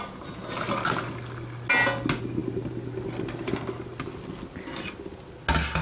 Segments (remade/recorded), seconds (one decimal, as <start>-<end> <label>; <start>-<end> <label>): 0.0-5.8 recorded